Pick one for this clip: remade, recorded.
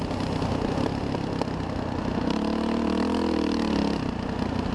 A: recorded